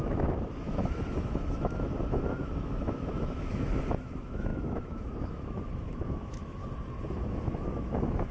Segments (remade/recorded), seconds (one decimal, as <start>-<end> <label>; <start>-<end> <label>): 0.0-6.6 remade; 6.6-7.1 recorded; 7.1-8.3 remade